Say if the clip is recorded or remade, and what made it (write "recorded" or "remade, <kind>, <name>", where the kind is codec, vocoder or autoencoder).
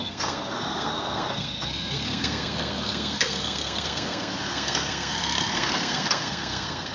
remade, codec, SNAC